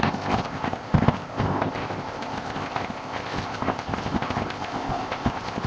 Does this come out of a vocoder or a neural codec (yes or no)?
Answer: yes